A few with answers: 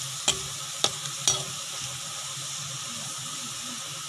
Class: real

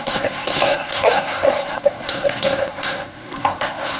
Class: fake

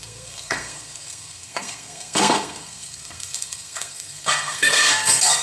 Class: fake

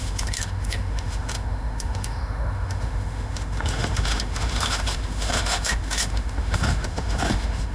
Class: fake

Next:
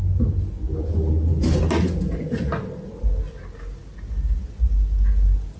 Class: real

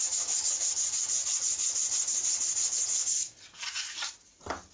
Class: real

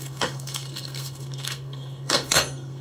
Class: fake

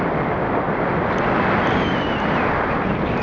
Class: real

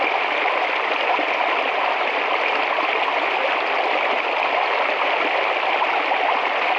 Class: real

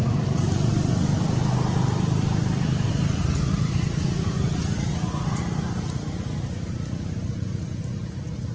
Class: real